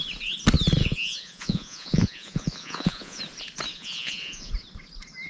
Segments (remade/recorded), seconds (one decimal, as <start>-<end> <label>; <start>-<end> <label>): 0.0-0.8 recorded; 0.8-3.2 remade; 3.2-3.7 recorded; 3.7-4.5 remade; 4.5-5.3 recorded